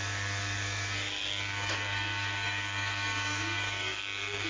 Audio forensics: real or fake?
fake